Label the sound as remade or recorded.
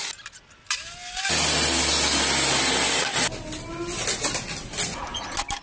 recorded